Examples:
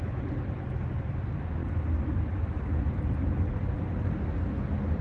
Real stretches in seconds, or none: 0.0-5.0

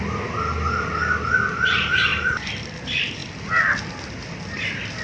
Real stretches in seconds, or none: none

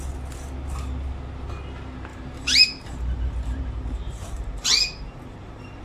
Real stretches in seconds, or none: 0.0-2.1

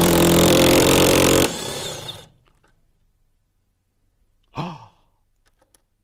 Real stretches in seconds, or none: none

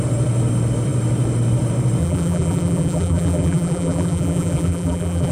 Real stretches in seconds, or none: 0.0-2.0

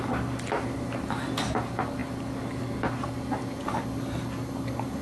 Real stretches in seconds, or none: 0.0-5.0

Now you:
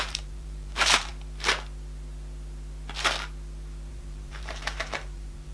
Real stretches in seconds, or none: 1.1-3.9